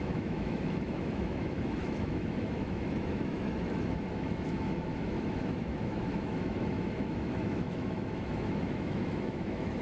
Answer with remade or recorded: remade